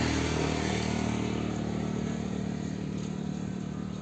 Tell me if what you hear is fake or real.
real